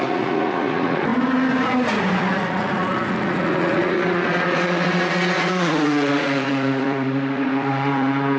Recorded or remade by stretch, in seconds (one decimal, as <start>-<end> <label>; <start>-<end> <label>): 0.0-8.4 remade